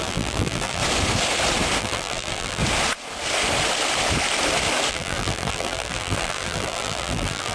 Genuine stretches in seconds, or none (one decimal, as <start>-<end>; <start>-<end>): 0.8-1.8; 2.6-4.9